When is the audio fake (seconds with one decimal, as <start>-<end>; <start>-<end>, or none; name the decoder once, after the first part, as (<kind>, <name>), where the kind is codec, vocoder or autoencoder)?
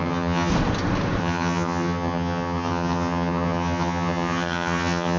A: 0.0-0.5 (vocoder, HiFi-GAN); 1.2-5.2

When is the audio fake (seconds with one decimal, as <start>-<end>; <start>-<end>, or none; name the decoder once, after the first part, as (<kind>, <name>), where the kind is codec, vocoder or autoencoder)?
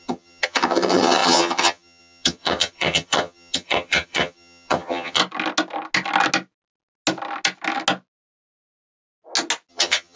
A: 0.0-5.2 (vocoder, HiFi-GAN); 9.7-10.2